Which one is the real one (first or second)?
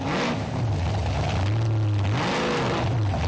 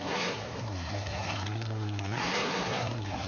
first